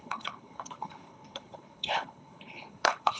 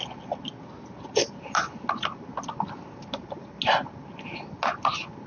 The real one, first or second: second